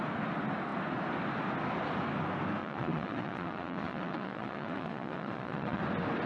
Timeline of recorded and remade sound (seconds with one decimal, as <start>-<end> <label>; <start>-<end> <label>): 0.0-2.6 recorded; 2.6-5.8 remade; 5.8-6.3 recorded